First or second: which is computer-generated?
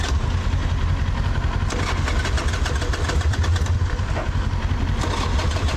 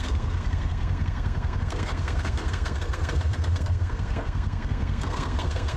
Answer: second